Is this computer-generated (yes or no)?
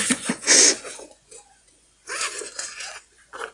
yes